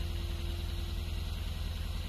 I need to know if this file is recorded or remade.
recorded